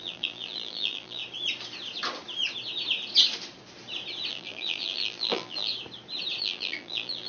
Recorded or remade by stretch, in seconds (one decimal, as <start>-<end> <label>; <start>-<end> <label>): 0.0-1.2 remade; 1.2-4.3 recorded; 4.3-5.7 remade; 5.7-6.4 recorded; 6.4-7.3 remade